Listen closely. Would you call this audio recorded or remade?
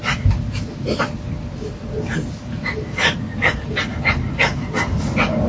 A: recorded